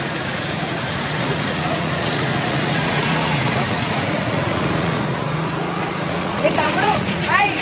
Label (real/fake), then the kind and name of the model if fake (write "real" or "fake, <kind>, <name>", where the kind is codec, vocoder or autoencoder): fake, vocoder, Vocos